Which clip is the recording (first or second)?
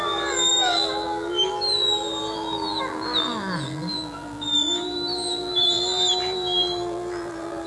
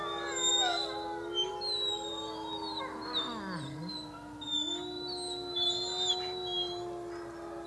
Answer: second